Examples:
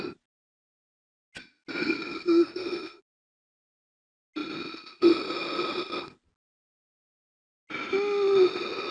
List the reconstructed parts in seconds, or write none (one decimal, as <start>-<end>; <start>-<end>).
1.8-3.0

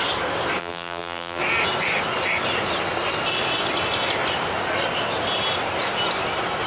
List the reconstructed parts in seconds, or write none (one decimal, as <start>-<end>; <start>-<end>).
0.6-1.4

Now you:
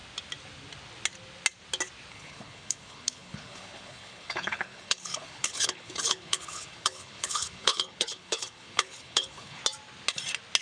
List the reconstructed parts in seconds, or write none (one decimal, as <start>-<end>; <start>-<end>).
2.1-9.6